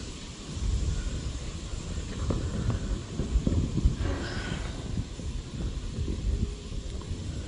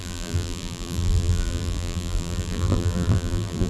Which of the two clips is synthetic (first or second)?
second